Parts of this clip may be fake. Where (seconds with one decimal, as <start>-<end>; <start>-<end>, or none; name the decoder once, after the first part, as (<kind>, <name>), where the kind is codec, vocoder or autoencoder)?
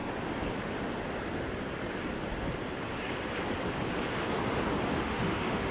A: 4.9-5.7 (autoencoder, DAC-VAE)